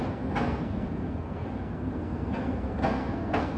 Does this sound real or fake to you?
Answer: fake